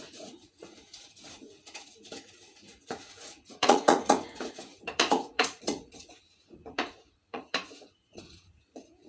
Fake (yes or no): yes